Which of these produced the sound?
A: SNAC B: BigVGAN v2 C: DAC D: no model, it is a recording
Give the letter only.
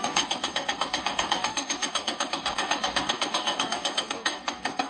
C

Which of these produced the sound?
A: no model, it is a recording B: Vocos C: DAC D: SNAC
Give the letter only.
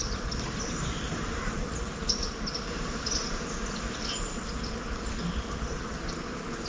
A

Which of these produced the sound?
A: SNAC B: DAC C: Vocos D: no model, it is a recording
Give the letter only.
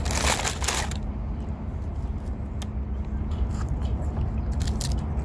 D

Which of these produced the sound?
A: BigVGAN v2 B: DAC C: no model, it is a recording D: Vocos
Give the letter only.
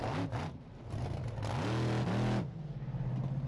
C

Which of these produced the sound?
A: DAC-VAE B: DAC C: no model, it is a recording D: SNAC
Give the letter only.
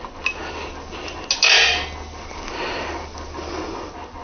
C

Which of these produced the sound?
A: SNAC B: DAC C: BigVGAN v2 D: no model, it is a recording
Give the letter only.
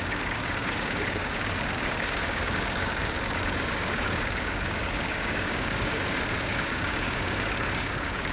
B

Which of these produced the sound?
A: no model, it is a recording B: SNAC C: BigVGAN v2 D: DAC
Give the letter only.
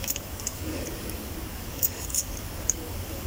D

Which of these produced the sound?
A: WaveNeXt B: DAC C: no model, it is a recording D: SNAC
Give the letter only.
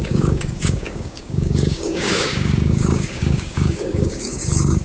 B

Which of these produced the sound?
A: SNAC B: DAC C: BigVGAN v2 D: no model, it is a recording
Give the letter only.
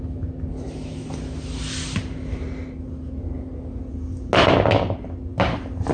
D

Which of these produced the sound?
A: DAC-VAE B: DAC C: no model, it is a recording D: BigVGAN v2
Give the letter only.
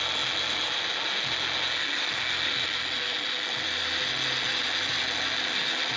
C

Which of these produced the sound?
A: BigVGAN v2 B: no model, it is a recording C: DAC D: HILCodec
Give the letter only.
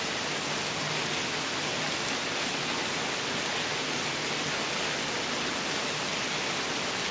B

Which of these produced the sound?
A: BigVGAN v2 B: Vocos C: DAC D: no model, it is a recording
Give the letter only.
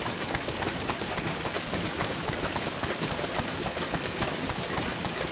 C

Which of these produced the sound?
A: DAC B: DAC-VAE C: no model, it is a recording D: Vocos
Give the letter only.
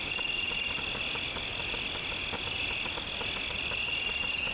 C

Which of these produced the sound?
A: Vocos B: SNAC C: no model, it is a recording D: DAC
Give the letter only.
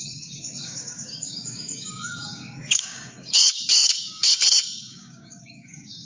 D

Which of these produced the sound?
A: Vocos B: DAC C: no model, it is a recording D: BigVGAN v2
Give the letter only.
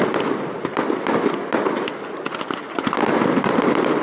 C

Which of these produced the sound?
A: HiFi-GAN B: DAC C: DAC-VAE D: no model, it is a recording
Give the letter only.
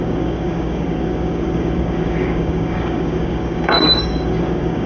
B